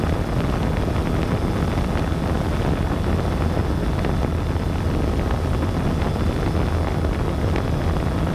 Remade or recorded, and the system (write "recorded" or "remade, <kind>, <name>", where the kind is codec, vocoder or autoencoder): recorded